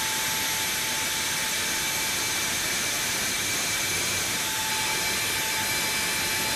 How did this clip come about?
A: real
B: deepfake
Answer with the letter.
A